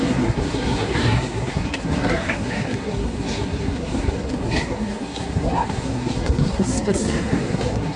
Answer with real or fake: fake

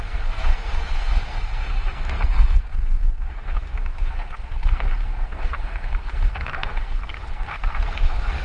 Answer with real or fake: fake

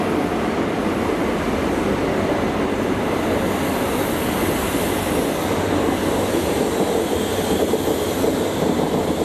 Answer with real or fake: fake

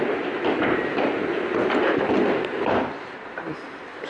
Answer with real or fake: real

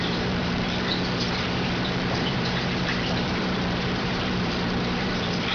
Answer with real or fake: fake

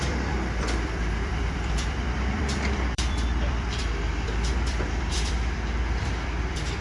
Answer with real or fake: fake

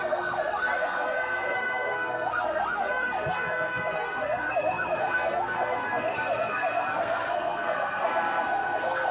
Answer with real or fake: fake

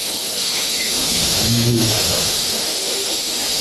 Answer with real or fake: fake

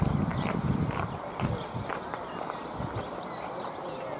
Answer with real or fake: real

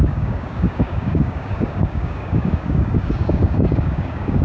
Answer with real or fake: fake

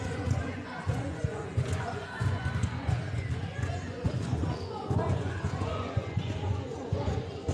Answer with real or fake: fake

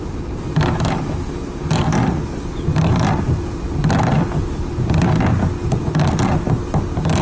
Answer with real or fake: real